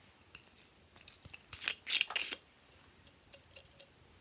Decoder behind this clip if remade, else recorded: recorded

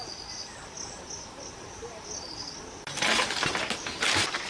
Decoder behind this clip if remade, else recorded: recorded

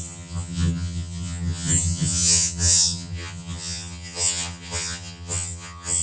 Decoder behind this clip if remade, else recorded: remade, vocoder, HiFi-GAN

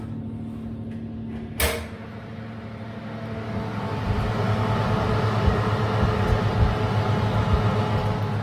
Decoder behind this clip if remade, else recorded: recorded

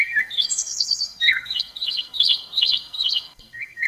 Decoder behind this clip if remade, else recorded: remade, codec, SNAC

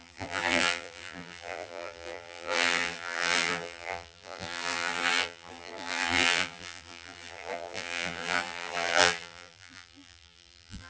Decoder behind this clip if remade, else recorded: remade, vocoder, BigVGAN v2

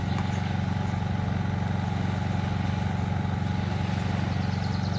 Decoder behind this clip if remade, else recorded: recorded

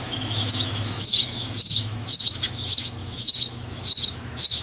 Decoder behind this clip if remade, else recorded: remade, autoencoder, DAC-VAE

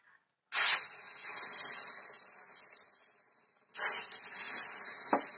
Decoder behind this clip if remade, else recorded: recorded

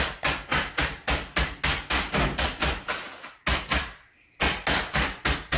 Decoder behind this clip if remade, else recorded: recorded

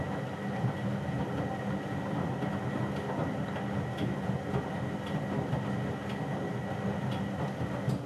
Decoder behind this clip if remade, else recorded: recorded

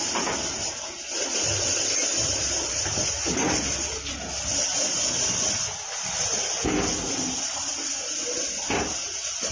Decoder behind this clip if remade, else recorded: recorded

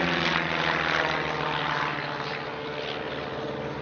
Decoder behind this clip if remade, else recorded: recorded